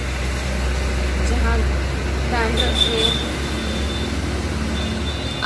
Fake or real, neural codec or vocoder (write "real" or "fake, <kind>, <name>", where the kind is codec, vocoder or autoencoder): real